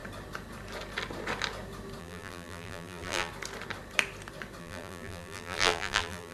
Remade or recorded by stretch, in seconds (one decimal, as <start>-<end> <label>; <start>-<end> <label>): 0.0-2.0 recorded; 2.0-3.3 remade; 3.3-4.6 recorded; 4.6-6.3 remade